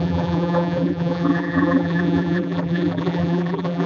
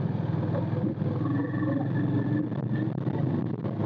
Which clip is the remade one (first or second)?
first